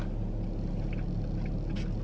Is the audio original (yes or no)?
yes